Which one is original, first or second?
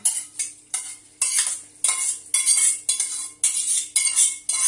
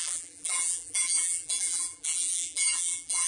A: first